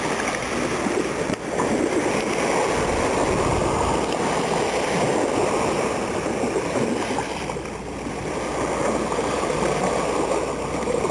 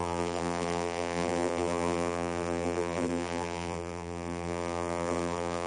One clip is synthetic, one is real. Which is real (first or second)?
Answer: first